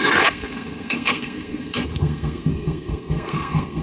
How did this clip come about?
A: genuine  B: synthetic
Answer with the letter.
B